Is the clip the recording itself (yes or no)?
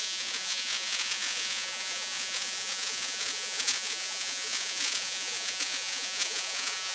no